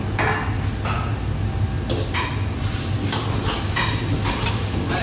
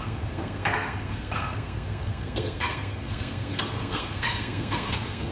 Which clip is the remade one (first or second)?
second